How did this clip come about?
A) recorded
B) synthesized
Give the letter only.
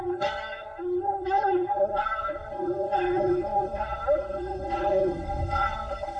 B